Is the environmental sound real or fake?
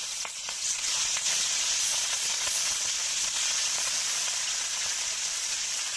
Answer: fake